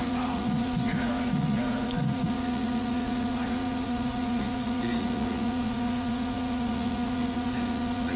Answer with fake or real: fake